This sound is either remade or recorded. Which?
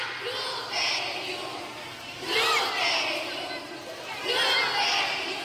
recorded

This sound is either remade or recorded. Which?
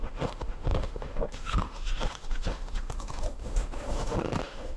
remade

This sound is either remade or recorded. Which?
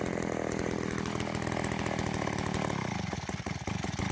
recorded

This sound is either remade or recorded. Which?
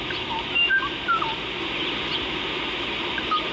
recorded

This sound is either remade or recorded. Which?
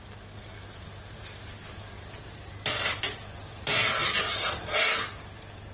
recorded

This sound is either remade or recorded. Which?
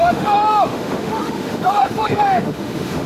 remade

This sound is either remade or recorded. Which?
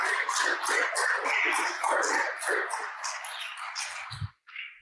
recorded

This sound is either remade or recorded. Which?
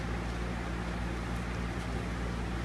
recorded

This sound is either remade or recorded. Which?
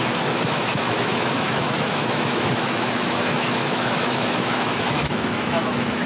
remade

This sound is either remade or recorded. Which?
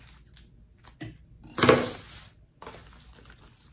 recorded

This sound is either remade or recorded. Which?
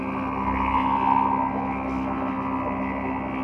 recorded